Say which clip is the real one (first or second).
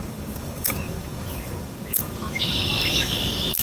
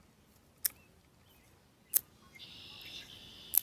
second